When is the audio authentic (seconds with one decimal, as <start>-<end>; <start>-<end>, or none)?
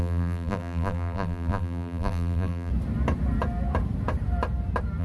2.7-5.0